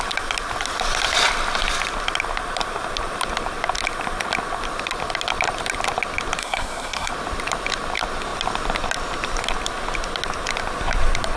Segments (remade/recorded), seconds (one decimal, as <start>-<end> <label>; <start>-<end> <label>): 0.0-6.4 recorded; 6.4-7.1 remade; 7.1-11.4 recorded